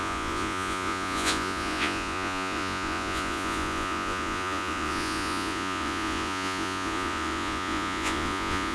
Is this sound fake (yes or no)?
yes